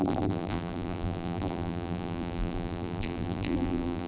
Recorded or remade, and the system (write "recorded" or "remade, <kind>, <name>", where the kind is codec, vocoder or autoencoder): remade, vocoder, BigVGAN v2